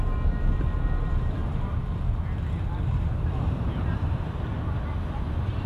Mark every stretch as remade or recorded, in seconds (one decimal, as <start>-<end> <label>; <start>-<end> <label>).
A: 0.0-5.7 recorded